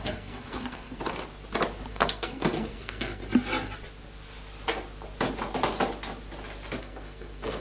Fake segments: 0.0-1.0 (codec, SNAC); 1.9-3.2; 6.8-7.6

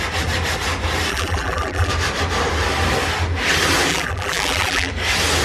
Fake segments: 1.1-1.9 (vocoder, BigVGAN v2); 3.9-4.9

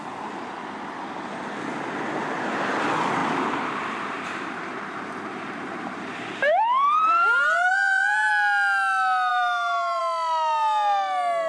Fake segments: 3.2-8.3 (vocoder, BigVGAN v2); 9.3-10.0

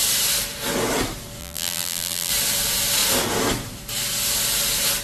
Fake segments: 1.4-2.3 (vocoder, BigVGAN v2)

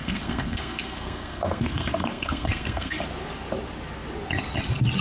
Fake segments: 0.0-3.0 (codec, SNAC)

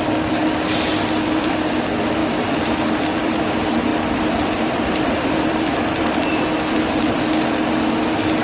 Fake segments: 2.2-3.4 (vocoder, BigVGAN v2); 3.9-7.2

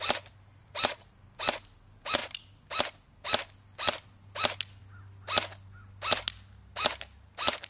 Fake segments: 0.6-1.4 (vocoder, BigVGAN v2)

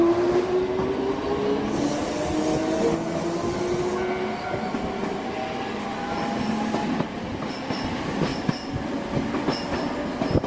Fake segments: none